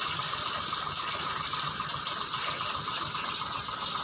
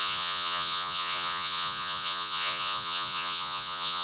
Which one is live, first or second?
first